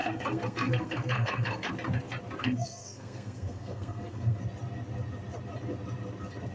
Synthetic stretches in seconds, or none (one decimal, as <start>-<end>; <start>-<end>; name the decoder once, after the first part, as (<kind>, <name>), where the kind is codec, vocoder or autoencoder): 0.0-1.7 (codec, SNAC); 2.4-4.4